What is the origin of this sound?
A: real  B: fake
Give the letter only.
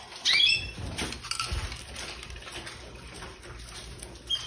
A